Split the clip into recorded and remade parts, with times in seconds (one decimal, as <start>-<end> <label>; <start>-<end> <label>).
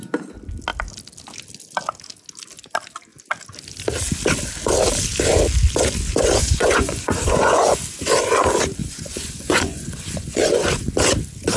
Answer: 0.0-6.4 recorded; 6.4-7.8 remade; 7.8-8.8 recorded; 8.8-10.9 remade; 10.9-11.6 recorded